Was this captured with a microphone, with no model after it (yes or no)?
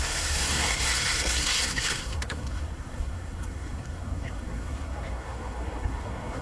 no